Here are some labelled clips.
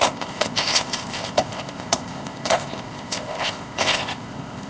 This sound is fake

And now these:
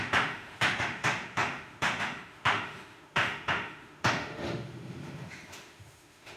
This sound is fake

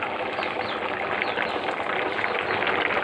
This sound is real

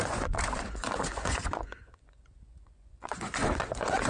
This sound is fake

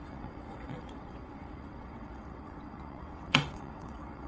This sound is fake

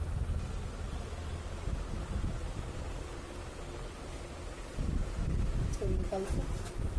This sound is real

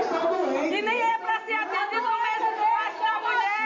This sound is real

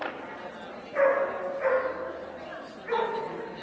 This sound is real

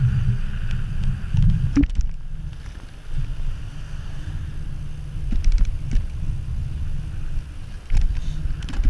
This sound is real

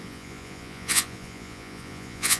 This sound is fake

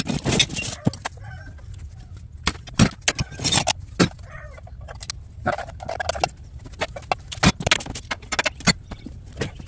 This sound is real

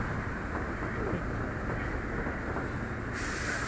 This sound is real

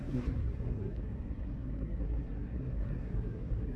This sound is fake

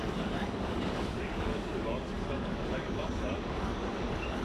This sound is fake